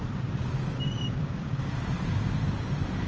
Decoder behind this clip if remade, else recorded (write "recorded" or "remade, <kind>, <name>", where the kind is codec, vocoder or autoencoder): remade, vocoder, BigVGAN v2